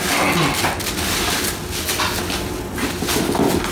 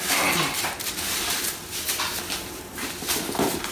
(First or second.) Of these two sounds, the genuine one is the first